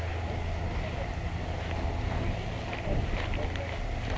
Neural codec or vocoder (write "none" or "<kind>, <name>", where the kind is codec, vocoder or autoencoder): none